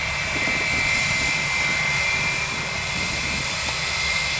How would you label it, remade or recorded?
recorded